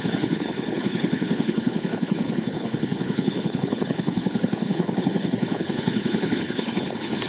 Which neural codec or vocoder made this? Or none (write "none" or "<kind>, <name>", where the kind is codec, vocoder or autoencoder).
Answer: codec, HILCodec